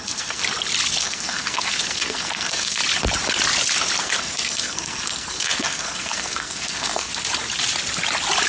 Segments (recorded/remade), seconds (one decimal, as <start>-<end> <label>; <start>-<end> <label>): 0.0-0.4 remade; 0.4-1.0 recorded; 1.0-2.8 remade; 2.8-4.0 recorded; 4.0-7.1 remade; 7.1-8.5 recorded